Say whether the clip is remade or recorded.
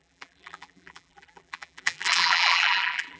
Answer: remade